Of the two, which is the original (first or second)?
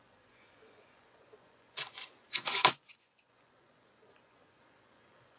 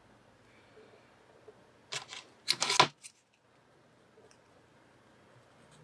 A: second